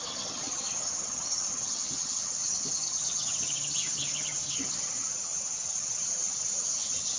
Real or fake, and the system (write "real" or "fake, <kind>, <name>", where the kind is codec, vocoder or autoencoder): fake, vocoder, HiFi-GAN